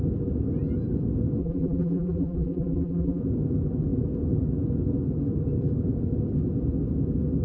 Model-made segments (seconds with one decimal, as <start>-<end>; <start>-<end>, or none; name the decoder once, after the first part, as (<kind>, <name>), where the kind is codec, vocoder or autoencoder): 1.4-3.2 (vocoder, BigVGAN v2)